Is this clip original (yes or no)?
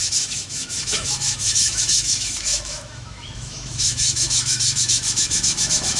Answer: no